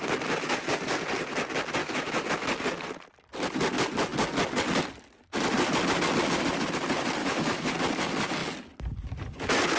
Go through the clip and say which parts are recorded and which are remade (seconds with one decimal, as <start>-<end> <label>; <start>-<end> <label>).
0.0-1.8 recorded; 1.8-2.3 remade; 2.3-7.2 recorded; 7.2-7.7 remade; 7.7-9.8 recorded